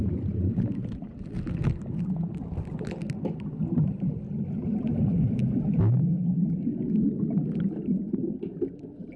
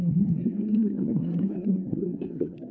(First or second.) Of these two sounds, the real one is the first